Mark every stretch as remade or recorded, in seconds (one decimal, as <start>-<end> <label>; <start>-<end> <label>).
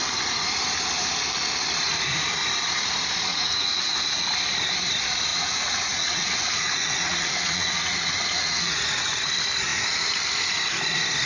0.0-3.3 recorded; 3.3-4.3 remade; 4.3-5.3 recorded; 5.3-9.1 remade; 9.1-11.3 recorded